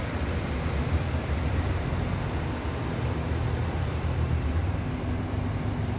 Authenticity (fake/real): real